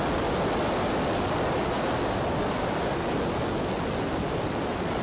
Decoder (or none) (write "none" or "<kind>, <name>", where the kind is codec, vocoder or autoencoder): none